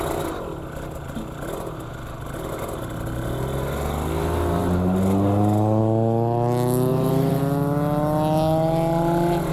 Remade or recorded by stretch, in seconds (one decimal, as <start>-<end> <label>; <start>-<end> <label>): 0.0-6.9 recorded; 6.9-7.4 remade; 7.4-9.5 recorded